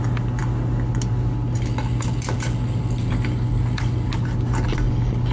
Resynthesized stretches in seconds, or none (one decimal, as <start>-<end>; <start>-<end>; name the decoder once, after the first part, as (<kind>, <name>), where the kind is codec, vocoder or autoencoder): none